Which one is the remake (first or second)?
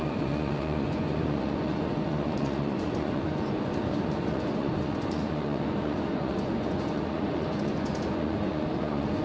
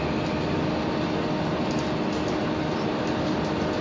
first